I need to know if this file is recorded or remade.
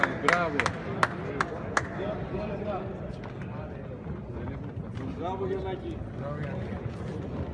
recorded